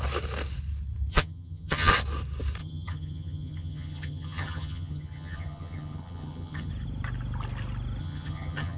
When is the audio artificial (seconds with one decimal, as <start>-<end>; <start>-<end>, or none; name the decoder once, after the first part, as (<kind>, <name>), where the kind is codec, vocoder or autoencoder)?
1.1-1.9 (vocoder, HiFi-GAN); 2.6-6.7; 8.0-8.8